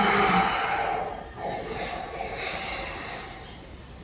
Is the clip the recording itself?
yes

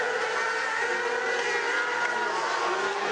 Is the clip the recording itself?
yes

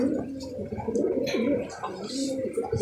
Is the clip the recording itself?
no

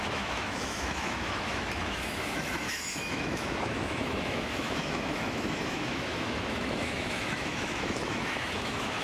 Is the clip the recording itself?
no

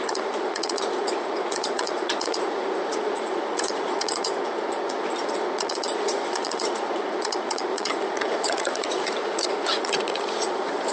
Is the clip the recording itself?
no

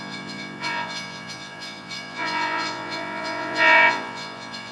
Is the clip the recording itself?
no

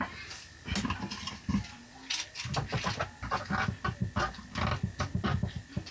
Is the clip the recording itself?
yes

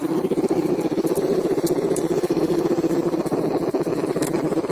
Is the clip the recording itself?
no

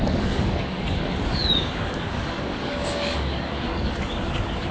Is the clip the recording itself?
no